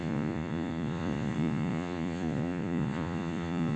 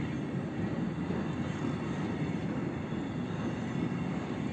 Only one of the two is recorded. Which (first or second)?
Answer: second